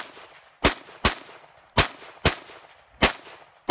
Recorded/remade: recorded